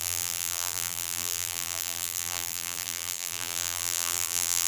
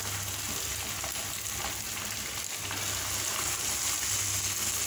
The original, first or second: second